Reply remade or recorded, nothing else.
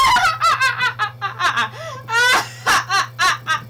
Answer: recorded